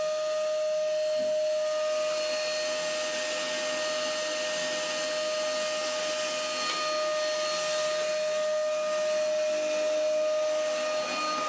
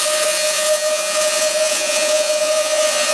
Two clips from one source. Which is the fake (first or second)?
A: second